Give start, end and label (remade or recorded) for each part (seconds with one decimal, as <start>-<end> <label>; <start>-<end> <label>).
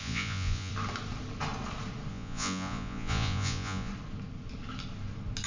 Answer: 0.0-0.7 remade; 0.7-2.1 recorded; 2.1-3.9 remade; 3.9-5.5 recorded